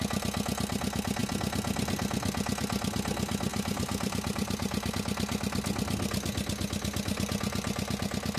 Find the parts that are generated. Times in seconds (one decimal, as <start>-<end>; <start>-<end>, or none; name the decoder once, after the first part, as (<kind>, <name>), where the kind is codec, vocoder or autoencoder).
3.5-4.9 (vocoder, BigVGAN v2)